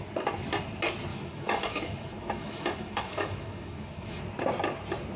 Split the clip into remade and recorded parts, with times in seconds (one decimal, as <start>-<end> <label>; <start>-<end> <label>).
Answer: 0.0-1.1 recorded; 1.1-4.2 remade; 4.2-5.2 recorded